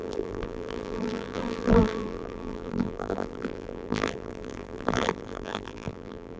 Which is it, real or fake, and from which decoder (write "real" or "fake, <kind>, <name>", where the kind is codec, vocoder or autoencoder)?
fake, vocoder, BigVGAN v2